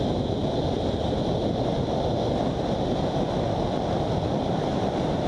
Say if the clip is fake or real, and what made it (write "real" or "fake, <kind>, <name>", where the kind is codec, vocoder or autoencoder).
real